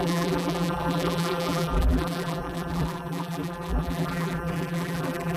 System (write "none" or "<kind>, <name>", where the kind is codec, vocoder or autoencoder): vocoder, BigVGAN v2